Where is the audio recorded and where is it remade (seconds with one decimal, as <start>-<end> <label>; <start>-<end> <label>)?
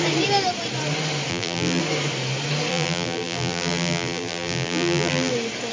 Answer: 0.0-1.3 recorded; 1.3-1.8 remade; 1.8-2.7 recorded; 2.7-5.3 remade; 5.3-5.7 recorded